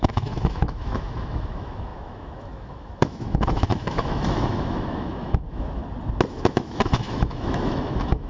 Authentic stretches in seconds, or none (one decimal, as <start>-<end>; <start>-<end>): 5.8-6.3